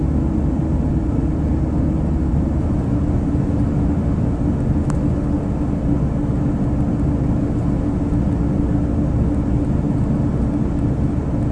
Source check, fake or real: real